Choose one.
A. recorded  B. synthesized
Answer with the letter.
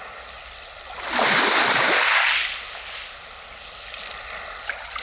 A